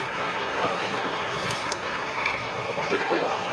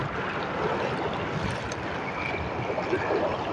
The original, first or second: second